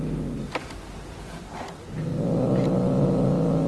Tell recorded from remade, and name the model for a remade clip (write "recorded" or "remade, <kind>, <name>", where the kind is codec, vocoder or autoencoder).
recorded